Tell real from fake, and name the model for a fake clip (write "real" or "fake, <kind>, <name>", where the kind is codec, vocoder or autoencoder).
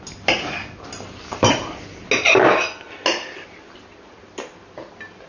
real